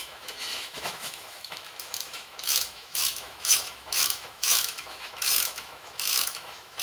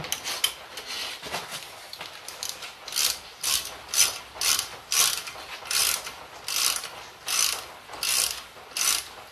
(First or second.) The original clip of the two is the second